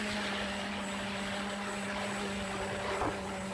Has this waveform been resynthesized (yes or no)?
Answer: no